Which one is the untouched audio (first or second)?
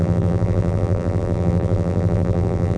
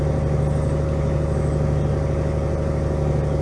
second